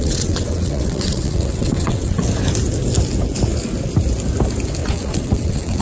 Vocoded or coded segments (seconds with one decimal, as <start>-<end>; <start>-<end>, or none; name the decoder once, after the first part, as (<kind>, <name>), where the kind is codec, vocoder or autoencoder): 0.0-2.2 (vocoder, WaveNeXt); 4.8-5.8